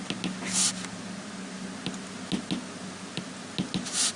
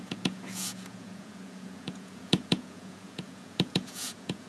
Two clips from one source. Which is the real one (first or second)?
first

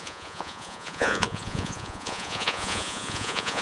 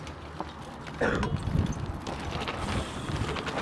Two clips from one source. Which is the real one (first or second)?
second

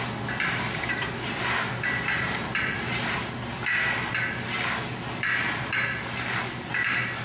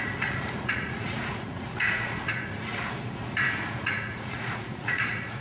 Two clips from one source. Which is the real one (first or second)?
first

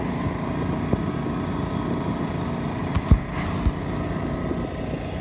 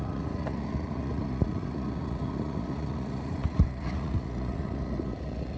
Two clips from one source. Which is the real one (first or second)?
first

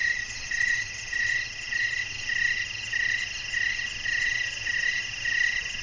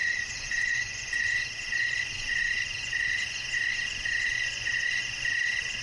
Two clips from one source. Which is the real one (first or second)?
first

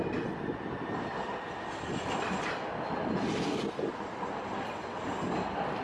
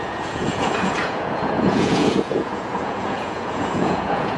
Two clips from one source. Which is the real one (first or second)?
first